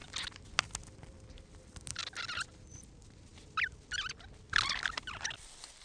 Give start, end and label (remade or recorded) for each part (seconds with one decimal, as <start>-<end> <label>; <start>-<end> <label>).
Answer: 0.0-5.8 recorded